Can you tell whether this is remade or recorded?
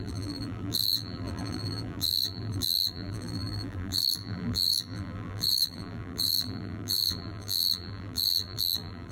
remade